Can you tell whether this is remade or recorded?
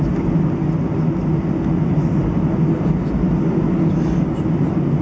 recorded